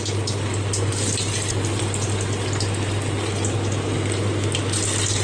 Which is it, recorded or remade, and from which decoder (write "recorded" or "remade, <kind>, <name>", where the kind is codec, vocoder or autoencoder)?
recorded